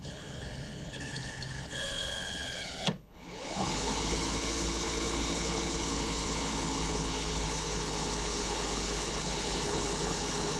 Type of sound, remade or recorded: remade